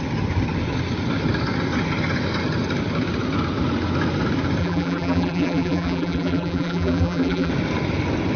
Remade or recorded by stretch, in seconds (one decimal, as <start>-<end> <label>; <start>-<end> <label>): 0.0-4.6 recorded; 4.6-7.5 remade; 7.5-8.4 recorded